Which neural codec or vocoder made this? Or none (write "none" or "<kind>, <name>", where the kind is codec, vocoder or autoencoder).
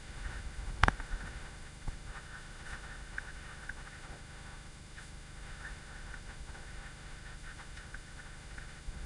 autoencoder, DAC-VAE